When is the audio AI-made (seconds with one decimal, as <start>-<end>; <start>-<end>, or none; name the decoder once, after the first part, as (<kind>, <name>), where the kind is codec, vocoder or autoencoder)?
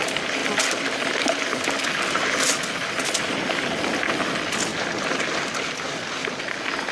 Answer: none